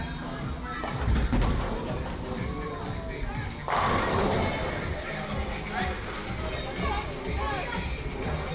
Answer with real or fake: real